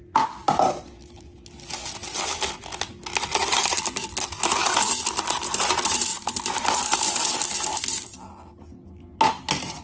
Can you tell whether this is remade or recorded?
recorded